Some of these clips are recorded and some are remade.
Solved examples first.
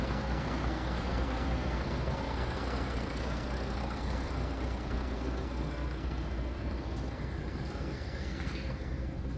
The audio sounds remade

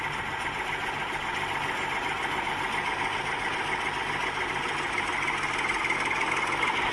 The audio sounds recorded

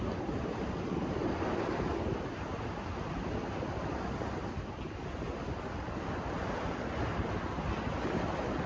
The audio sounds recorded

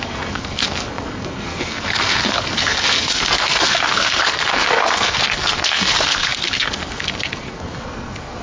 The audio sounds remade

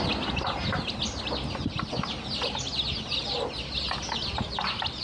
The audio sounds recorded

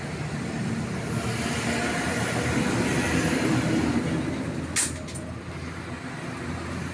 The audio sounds recorded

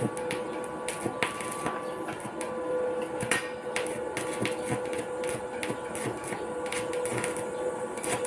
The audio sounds recorded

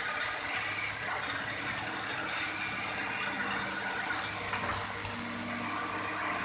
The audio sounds recorded